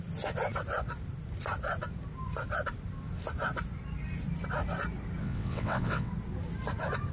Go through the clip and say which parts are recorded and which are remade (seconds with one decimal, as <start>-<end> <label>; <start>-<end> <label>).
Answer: 0.0-5.2 recorded; 5.2-6.1 remade; 6.1-7.1 recorded